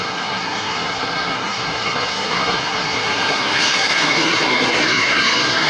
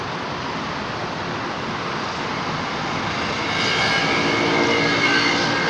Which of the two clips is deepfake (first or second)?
first